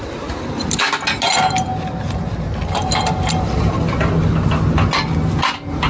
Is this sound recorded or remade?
recorded